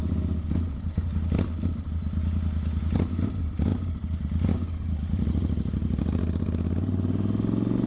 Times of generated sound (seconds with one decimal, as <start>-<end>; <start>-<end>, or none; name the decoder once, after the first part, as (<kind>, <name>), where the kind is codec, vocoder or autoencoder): 3.7-6.2 (vocoder, BigVGAN v2)